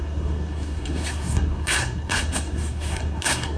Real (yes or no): no